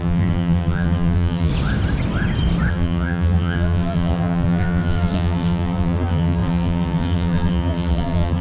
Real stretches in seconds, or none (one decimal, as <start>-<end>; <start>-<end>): 1.5-2.7